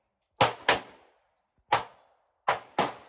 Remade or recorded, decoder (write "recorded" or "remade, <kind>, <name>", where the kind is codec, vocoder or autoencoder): recorded